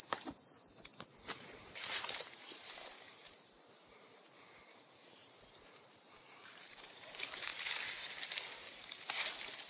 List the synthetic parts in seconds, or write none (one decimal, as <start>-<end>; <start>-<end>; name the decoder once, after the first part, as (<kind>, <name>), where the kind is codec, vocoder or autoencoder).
0.0-7.5 (vocoder, BigVGAN v2)